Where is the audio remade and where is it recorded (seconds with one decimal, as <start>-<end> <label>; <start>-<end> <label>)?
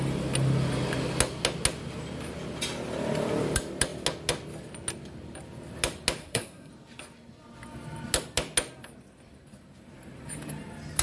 0.0-6.2 recorded; 6.2-6.7 remade; 6.7-11.0 recorded